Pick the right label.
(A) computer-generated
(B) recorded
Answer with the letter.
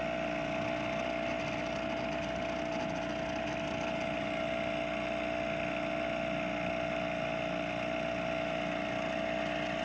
B